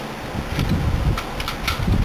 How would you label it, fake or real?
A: real